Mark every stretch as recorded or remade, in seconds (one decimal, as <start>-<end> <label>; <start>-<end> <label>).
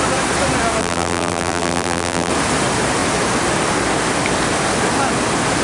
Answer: 0.0-0.8 recorded; 0.8-2.3 remade; 2.3-5.6 recorded